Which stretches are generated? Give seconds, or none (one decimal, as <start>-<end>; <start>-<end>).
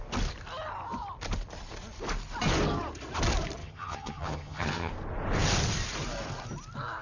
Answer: 3.6-4.9